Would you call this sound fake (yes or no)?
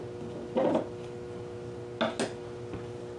no